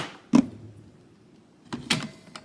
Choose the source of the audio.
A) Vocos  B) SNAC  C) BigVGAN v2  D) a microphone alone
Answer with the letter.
D